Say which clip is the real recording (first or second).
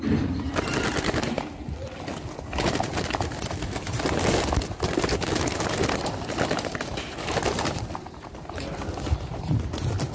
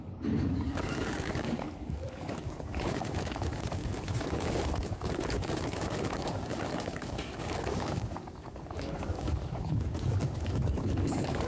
first